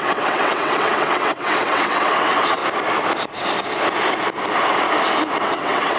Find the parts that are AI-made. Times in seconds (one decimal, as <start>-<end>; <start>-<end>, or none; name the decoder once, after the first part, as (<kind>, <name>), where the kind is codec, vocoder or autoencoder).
0.0-2.6 (vocoder, WaveNeXt); 5.4-6.0